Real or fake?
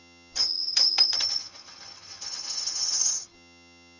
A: fake